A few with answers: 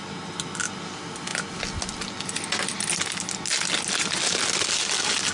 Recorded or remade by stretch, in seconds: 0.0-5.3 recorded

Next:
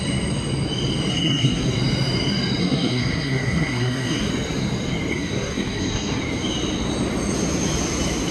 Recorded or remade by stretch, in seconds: 0.0-1.1 recorded; 1.1-1.7 remade; 1.7-2.6 recorded; 2.6-4.3 remade; 4.3-5.1 recorded; 5.1-6.2 remade; 6.2-8.3 recorded